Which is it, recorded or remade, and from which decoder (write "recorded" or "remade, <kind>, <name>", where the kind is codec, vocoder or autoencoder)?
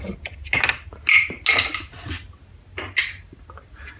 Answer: recorded